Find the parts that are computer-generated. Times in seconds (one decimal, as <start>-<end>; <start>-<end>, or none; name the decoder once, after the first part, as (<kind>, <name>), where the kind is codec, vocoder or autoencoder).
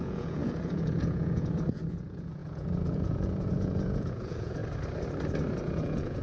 0.0-4.6 (vocoder, Vocos); 5.6-6.2